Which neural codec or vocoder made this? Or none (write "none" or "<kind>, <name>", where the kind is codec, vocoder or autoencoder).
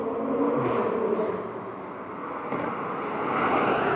none